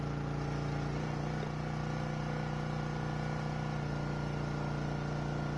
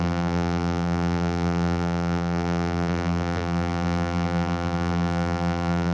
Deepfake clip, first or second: second